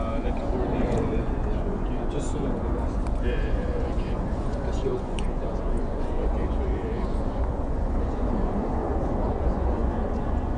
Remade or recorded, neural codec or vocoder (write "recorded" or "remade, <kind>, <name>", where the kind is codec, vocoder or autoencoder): remade, vocoder, Vocos